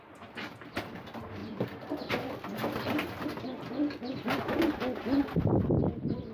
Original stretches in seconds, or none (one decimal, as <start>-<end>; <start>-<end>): 0.0-6.3